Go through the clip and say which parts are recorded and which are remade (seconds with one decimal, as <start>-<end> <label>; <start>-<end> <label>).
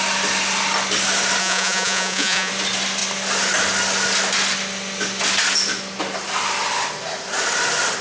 0.0-1.4 recorded; 1.4-2.5 remade; 2.5-8.0 recorded